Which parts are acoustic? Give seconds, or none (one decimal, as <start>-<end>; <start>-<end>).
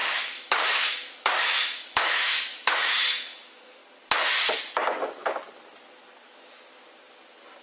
3.8-7.6